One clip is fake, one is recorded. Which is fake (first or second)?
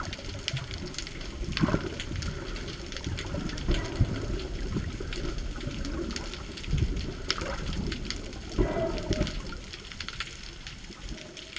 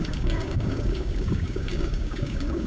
second